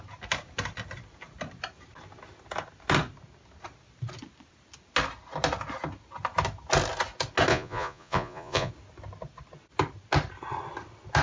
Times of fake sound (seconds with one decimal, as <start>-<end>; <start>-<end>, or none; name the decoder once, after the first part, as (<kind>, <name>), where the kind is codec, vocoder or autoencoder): 7.5-8.7 (vocoder, Vocos)